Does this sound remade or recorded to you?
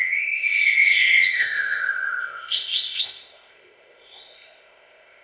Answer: remade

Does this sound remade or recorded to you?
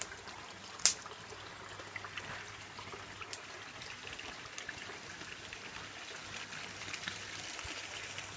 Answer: recorded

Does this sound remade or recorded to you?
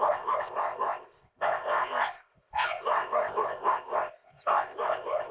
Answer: remade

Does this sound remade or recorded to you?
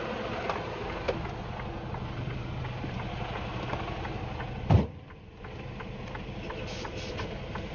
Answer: recorded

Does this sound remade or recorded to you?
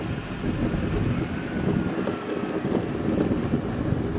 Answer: recorded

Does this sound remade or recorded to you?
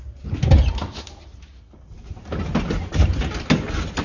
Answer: recorded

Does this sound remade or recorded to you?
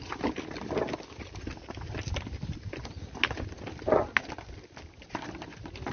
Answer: recorded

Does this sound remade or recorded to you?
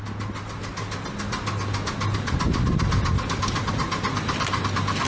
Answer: recorded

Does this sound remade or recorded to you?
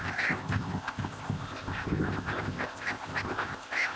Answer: remade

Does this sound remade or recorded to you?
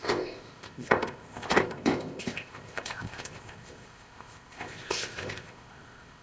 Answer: remade